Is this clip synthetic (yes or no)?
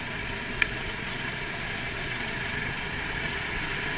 yes